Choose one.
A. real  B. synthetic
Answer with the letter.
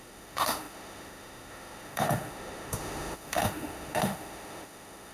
B